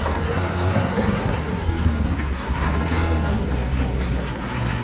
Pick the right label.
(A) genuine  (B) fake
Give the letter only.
B